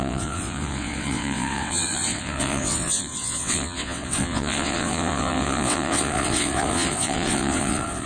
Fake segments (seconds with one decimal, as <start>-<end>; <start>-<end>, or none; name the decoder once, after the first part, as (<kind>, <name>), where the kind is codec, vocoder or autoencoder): 0.0-8.1 (vocoder, WaveNeXt)